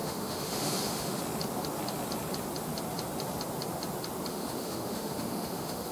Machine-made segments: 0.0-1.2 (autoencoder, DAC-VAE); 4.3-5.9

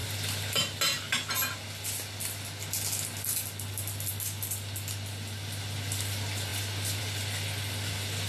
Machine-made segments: none

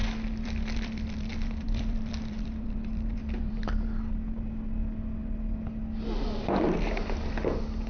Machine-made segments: 0.0-3.8 (vocoder, BigVGAN v2)

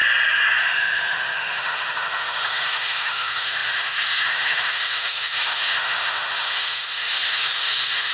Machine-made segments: 0.6-8.1 (autoencoder, DAC-VAE)

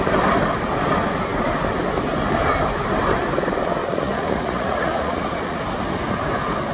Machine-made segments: 3.8-5.6 (vocoder, Vocos)

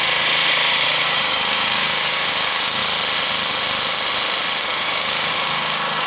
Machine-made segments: 0.7-2.8 (codec, DAC); 4.6-6.1

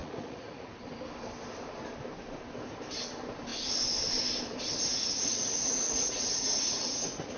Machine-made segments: 0.0-0.7 (vocoder, Vocos); 4.9-7.4

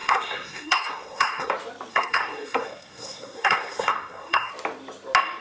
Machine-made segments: 0.0-1.5 (codec, SNAC); 1.9-4.5